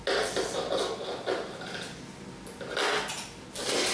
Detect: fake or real real